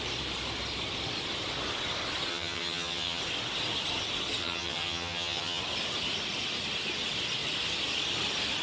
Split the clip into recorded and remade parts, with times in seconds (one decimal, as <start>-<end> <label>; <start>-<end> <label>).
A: 0.0-2.3 recorded; 2.3-3.2 remade; 3.2-4.4 recorded; 4.4-5.6 remade; 5.6-8.6 recorded